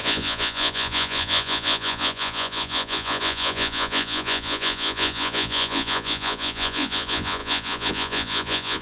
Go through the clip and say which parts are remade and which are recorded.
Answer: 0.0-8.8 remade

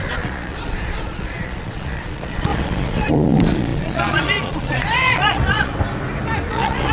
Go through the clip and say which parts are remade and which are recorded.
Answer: 0.0-5.7 remade; 5.7-6.5 recorded; 6.5-6.9 remade

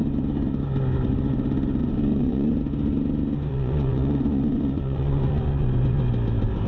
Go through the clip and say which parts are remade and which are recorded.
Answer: 0.0-1.8 recorded; 1.8-2.5 remade; 2.5-3.5 recorded; 3.5-6.0 remade; 6.0-6.7 recorded

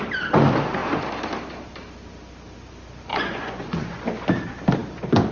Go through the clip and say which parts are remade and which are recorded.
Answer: 0.0-3.1 recorded; 3.1-4.0 remade; 4.0-5.3 recorded

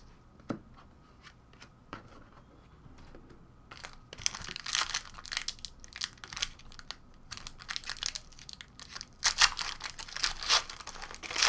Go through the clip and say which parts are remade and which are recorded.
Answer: 0.0-1.8 recorded; 1.8-2.3 remade; 2.3-11.5 recorded